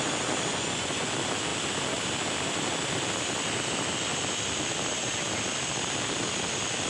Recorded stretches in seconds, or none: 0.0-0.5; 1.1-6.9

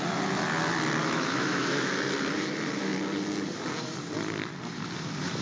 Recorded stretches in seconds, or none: 0.0-1.0; 1.9-5.4